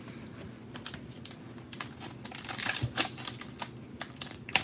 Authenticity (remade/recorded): recorded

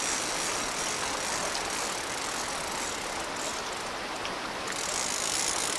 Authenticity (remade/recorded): recorded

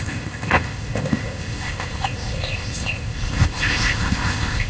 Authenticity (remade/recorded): remade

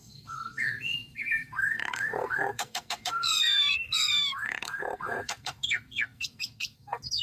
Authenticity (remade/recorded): remade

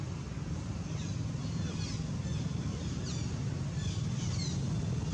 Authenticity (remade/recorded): recorded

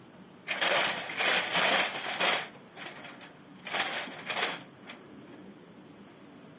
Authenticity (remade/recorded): recorded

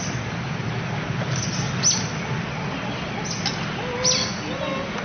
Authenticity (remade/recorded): recorded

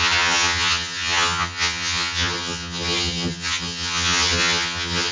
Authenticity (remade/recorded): remade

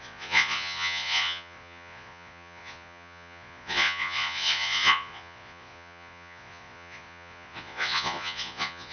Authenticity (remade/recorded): remade